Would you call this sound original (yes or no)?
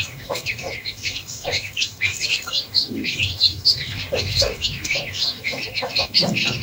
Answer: no